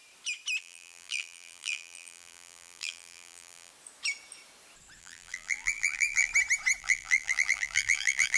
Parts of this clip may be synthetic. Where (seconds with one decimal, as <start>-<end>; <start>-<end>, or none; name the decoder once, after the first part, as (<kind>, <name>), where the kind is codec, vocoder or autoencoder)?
0.6-3.7 (vocoder, BigVGAN v2); 5.0-6.3; 6.8-8.4